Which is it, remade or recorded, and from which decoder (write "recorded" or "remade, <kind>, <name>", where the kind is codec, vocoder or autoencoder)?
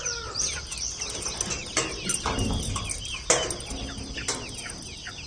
recorded